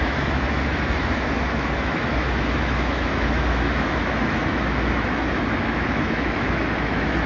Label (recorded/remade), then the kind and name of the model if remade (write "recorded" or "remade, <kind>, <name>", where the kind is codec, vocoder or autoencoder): remade, autoencoder, DAC-VAE